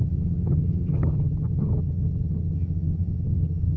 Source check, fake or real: fake